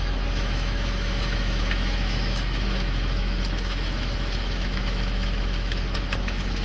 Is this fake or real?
fake